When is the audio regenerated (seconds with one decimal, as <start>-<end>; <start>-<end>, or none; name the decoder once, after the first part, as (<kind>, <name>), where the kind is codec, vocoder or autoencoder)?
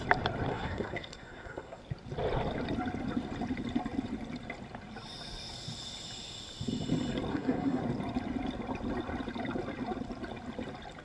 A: 0.5-1.8 (codec, SNAC); 7.3-7.8